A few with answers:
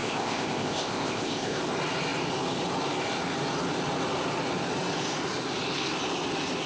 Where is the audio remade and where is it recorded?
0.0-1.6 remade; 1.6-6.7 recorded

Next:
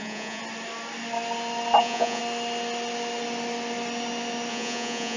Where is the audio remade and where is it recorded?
0.0-0.4 remade; 0.4-1.8 recorded; 1.8-2.2 remade; 2.2-4.5 recorded; 4.5-5.2 remade

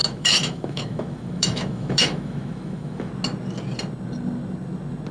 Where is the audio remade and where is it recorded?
0.0-3.1 remade; 3.1-5.1 recorded

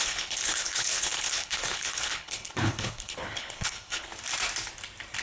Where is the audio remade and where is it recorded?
0.0-4.1 remade; 4.1-5.2 recorded

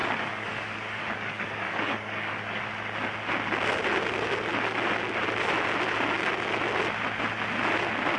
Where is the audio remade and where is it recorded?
0.0-2.6 remade; 2.6-8.2 recorded

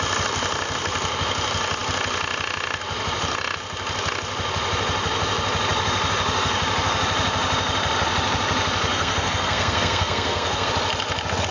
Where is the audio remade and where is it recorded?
0.0-8.9 recorded; 8.9-10.7 remade; 10.7-11.5 recorded

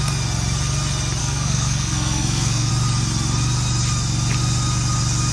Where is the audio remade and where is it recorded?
0.0-1.2 recorded; 1.2-2.7 remade; 2.7-5.3 recorded